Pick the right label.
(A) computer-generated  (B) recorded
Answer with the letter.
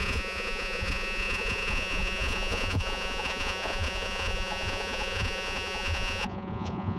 A